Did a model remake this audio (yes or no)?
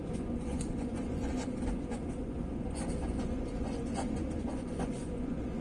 yes